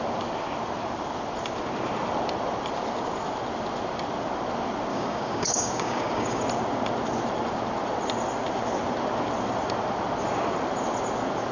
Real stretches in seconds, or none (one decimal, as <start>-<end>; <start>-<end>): 0.0-4.9; 6.4-11.5